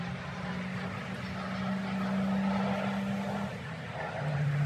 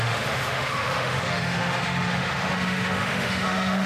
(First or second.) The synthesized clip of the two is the second